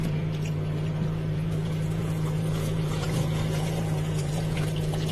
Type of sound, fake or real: fake